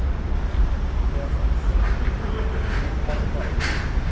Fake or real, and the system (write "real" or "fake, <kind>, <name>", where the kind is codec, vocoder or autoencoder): real